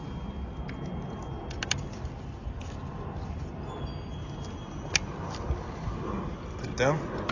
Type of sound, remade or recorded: recorded